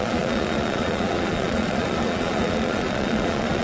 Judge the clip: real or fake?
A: fake